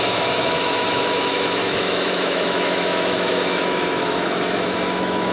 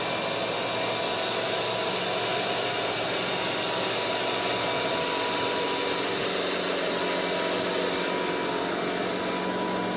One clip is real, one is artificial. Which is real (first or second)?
second